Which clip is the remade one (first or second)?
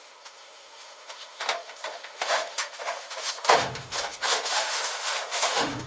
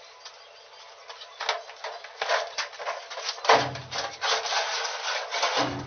first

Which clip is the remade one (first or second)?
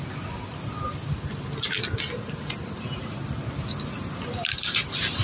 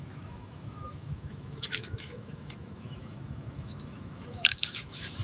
second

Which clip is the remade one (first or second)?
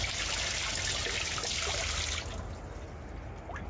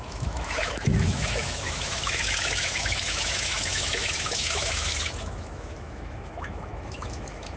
second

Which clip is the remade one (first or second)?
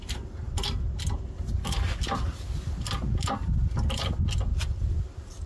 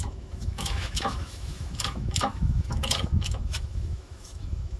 second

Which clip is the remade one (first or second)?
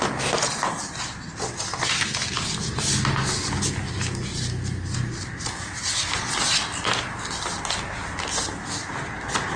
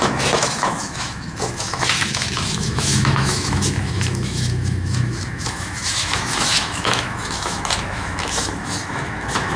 second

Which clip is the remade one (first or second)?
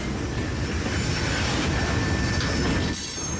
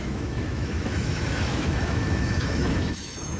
second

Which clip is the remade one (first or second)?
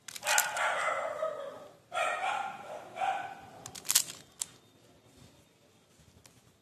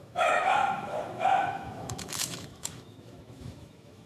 second